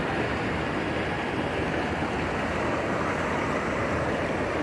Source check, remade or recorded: recorded